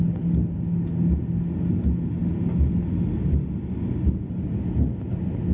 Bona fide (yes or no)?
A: yes